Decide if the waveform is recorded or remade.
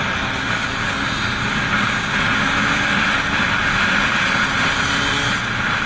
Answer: recorded